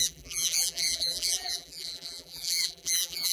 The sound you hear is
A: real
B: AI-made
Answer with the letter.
B